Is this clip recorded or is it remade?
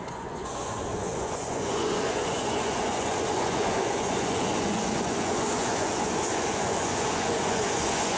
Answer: remade